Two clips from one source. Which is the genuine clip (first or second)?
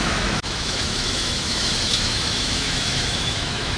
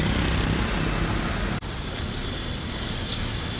second